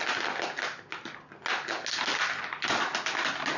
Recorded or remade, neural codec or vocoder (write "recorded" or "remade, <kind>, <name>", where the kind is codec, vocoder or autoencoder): recorded